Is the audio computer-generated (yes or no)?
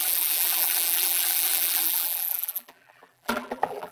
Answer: yes